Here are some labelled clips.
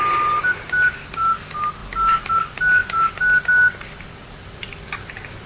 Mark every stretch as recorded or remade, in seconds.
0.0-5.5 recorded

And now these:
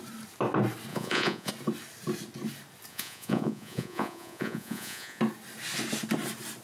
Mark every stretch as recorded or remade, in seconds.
0.0-0.9 recorded; 0.9-1.5 remade; 1.5-2.9 recorded; 2.9-5.2 remade; 5.2-6.6 recorded

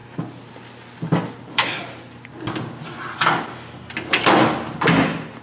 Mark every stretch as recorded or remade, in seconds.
0.0-5.4 recorded

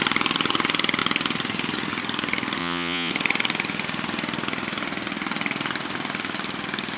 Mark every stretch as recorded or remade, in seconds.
0.0-2.6 recorded; 2.6-3.1 remade; 3.1-7.0 recorded

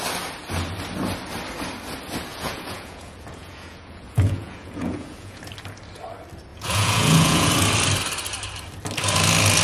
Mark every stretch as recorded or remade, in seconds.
0.0-2.3 recorded; 2.3-5.4 remade; 5.4-6.5 recorded; 6.5-7.5 remade; 7.5-9.6 recorded

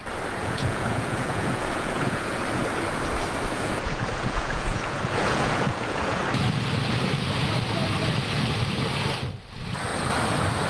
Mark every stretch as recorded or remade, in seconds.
0.0-0.4 recorded; 0.4-2.4 remade; 2.4-3.5 recorded; 3.5-6.2 remade; 6.2-10.7 recorded